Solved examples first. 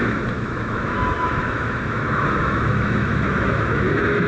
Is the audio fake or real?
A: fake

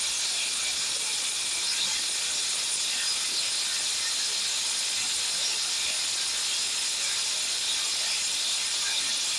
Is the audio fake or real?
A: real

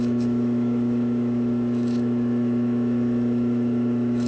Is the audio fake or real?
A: fake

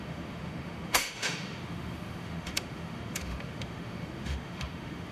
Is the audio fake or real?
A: fake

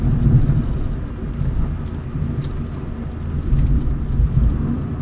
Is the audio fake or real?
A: real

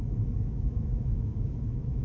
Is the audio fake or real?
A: fake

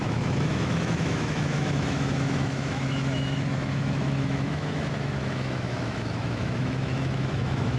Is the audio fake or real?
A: fake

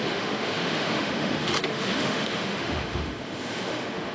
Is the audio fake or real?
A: fake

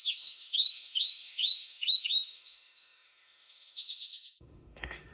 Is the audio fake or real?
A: fake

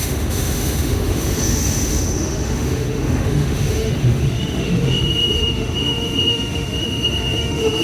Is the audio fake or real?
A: fake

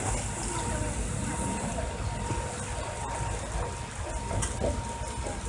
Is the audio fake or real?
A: real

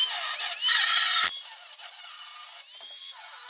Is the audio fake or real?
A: real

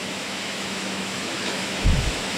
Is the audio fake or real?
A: fake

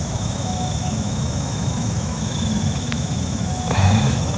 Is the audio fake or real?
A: fake